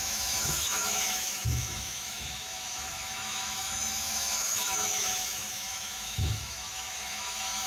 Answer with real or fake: fake